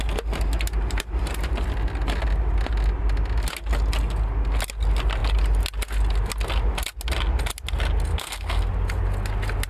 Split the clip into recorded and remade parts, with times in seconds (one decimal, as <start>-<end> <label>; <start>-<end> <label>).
0.0-8.1 recorded; 8.1-8.7 remade; 8.7-9.7 recorded